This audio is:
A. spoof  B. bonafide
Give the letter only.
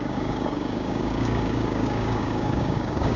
A